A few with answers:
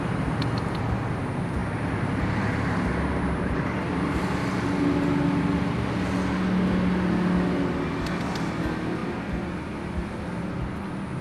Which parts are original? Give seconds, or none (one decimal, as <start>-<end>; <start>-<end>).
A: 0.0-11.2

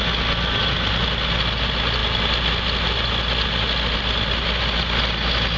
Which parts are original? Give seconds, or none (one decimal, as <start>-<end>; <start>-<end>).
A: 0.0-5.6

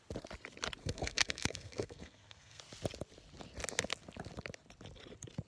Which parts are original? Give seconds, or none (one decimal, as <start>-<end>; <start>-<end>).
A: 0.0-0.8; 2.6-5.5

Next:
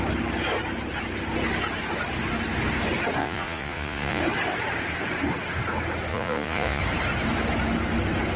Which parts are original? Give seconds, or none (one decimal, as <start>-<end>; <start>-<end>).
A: 0.0-3.2; 4.2-6.1; 6.8-8.4

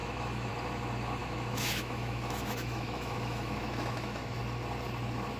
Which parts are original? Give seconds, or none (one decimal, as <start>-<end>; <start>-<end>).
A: 0.5-1.2; 4.4-5.4